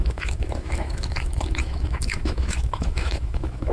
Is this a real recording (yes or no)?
no